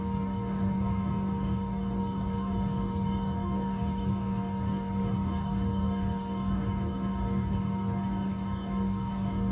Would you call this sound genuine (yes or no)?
no